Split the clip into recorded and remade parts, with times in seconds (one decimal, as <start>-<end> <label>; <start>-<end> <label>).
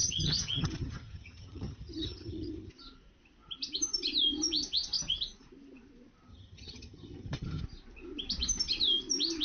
0.0-2.7 remade; 2.7-6.3 recorded; 6.3-7.6 remade; 7.6-9.4 recorded